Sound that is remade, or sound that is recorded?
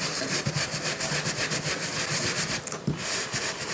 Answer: recorded